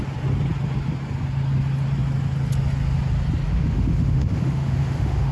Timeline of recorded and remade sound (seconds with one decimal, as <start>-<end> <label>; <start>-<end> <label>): 0.0-3.5 recorded; 3.5-5.3 remade